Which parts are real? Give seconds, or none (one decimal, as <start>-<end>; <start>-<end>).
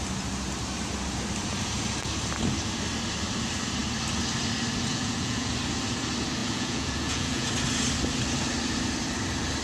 0.0-4.9; 5.5-6.4; 7.5-9.6